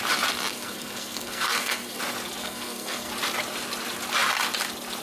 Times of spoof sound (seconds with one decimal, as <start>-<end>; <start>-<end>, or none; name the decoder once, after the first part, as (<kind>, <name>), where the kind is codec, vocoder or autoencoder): 0.5-2.0 (codec, SNAC); 2.4-3.1